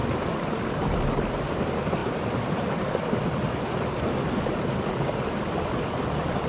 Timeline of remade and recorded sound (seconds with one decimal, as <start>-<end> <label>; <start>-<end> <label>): 0.0-2.0 recorded; 2.0-5.7 remade; 5.7-6.5 recorded